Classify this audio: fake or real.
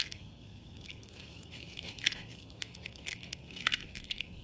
fake